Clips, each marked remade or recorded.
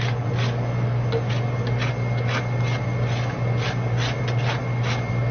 recorded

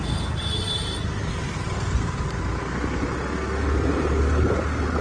recorded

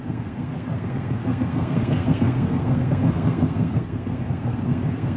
remade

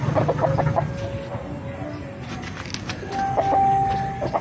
recorded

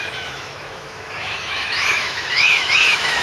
remade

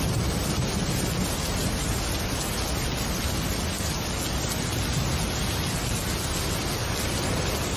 recorded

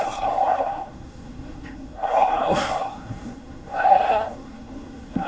remade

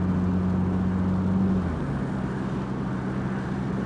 recorded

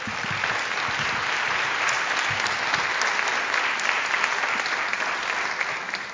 recorded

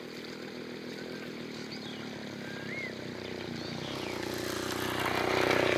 recorded